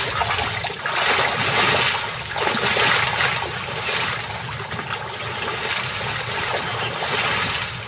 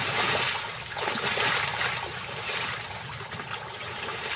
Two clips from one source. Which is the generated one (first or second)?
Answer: second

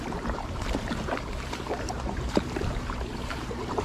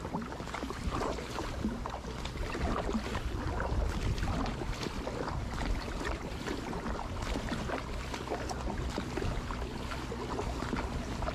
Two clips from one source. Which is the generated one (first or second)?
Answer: first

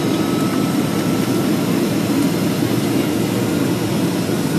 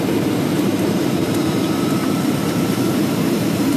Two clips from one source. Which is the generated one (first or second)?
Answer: second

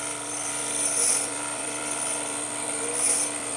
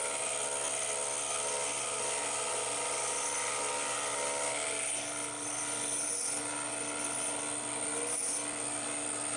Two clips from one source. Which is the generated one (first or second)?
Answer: first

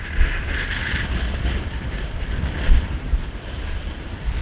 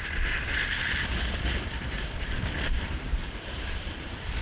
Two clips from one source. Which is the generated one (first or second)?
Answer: second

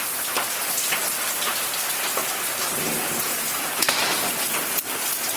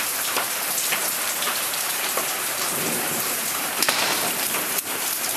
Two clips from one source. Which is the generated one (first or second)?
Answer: second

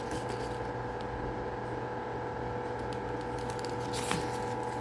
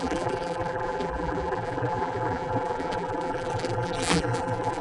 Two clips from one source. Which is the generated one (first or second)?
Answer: second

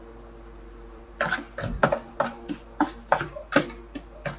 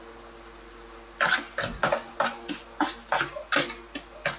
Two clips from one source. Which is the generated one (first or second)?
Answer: first